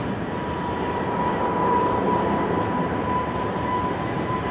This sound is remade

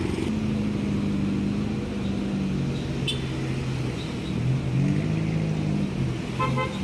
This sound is recorded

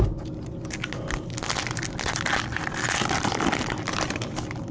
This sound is recorded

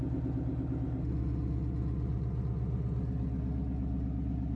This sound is recorded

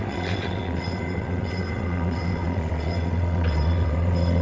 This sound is remade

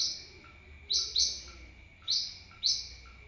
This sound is recorded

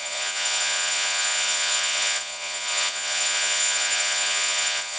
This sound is remade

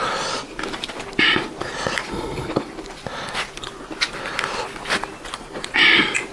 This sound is recorded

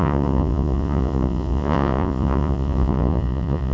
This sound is remade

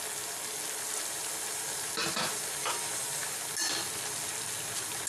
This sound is recorded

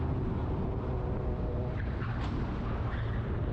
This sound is recorded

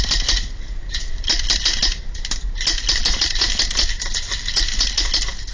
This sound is recorded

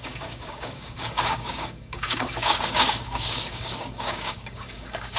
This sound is remade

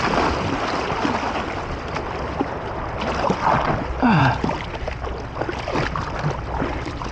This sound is recorded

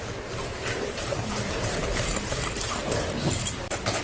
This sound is remade